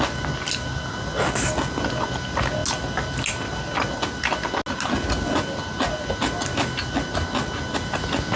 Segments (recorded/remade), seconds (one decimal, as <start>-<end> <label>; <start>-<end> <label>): 0.0-8.4 recorded